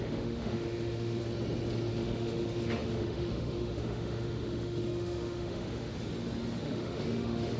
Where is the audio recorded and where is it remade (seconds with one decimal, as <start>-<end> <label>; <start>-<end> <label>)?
0.0-1.2 remade; 1.2-1.9 recorded; 1.9-5.9 remade; 5.9-6.6 recorded; 6.6-7.6 remade